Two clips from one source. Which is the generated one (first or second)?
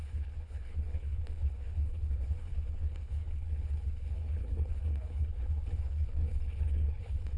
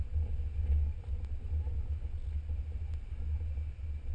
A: first